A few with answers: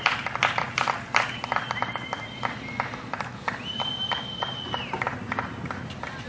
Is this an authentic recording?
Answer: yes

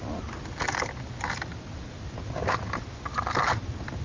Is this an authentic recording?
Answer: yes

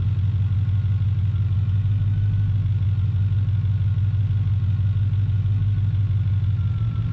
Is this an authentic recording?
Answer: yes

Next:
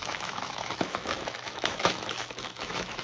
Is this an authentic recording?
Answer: no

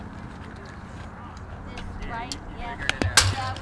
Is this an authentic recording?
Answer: yes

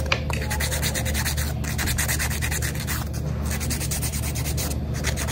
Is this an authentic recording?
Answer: yes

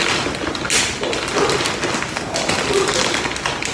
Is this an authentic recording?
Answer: yes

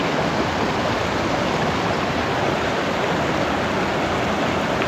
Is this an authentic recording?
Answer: yes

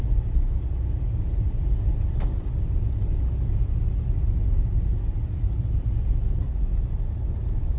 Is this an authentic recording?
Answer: yes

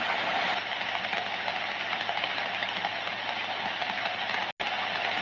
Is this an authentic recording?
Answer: yes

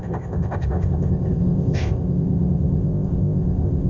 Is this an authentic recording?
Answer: no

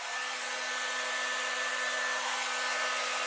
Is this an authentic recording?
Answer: yes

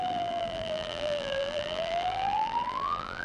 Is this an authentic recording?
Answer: no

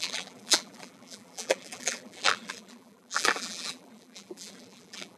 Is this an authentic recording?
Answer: no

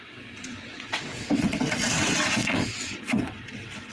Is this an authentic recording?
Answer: no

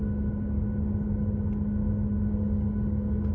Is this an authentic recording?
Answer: yes